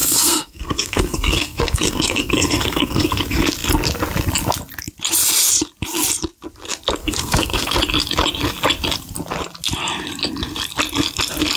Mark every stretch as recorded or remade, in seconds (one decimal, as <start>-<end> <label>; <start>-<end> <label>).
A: 0.0-3.2 remade; 3.2-7.0 recorded; 7.0-7.7 remade; 7.7-11.6 recorded